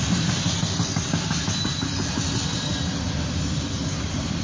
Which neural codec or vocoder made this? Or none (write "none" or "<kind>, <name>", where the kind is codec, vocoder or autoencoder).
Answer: none